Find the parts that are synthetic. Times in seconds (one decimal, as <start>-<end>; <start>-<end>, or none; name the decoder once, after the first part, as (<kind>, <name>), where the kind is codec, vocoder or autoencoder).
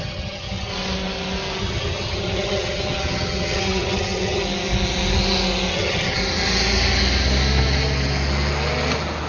0.0-0.7 (vocoder, HiFi-GAN); 1.6-4.4; 5.7-6.2